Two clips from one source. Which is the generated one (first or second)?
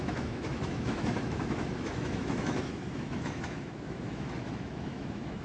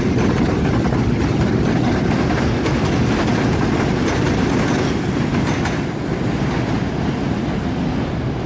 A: first